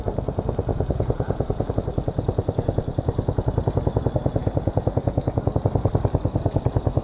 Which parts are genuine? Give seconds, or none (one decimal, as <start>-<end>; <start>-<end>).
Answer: 0.0-0.7; 1.7-4.4; 5.5-7.0